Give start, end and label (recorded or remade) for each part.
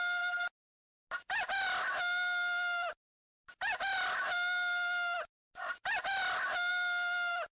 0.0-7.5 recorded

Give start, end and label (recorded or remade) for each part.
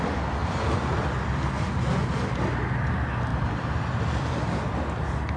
0.0-0.4 recorded; 0.4-1.0 remade; 1.0-3.3 recorded; 3.3-4.6 remade; 4.6-5.4 recorded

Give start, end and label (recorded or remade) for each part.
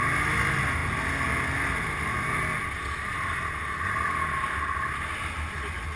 0.0-6.0 recorded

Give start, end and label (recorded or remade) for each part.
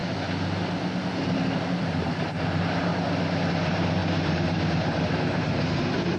0.0-1.2 recorded; 1.2-2.9 remade; 2.9-3.5 recorded; 3.5-6.2 remade